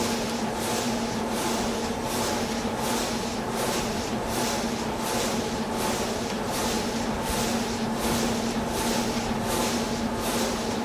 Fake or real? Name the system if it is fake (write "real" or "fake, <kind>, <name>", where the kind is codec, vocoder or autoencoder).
real